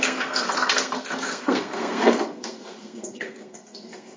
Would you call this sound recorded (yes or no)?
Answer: no